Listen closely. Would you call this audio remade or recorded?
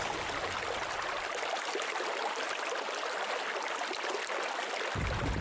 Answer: recorded